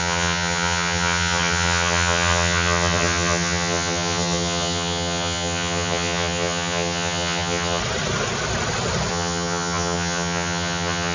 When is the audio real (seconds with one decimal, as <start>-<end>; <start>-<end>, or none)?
7.8-9.1

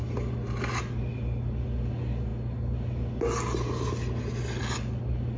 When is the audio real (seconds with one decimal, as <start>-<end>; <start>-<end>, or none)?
0.0-5.4